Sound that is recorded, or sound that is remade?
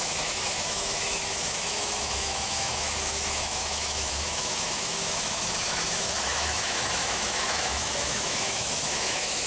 remade